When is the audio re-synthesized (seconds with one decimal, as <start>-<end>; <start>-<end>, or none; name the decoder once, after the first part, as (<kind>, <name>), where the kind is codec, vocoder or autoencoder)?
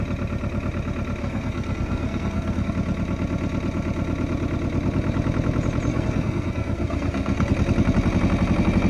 1.2-2.7 (codec, SNAC); 5.9-7.5